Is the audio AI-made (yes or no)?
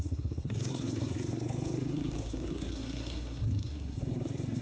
yes